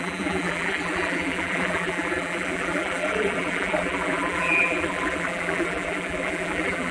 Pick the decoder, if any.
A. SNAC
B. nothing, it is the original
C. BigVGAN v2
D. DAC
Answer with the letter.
C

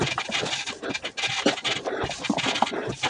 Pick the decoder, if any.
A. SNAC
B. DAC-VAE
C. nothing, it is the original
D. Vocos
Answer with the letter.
C